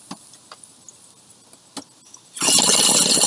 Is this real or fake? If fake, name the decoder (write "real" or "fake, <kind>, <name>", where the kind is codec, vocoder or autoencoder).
real